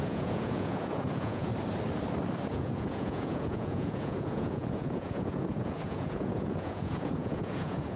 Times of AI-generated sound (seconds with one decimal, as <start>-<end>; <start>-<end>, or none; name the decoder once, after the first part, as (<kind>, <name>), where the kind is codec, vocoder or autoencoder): 0.0-1.5 (vocoder, Vocos); 2.5-8.0